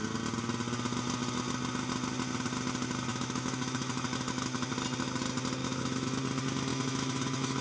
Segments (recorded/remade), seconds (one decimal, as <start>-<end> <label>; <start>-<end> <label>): 0.0-3.1 recorded; 3.1-4.7 remade; 4.7-5.6 recorded; 5.6-6.2 remade; 6.2-6.7 recorded; 6.7-7.6 remade